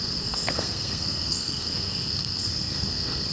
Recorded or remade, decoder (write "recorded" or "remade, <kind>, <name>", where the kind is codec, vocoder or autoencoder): remade, codec, SNAC